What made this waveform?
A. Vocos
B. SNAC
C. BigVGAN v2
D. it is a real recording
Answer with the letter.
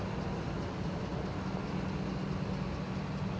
D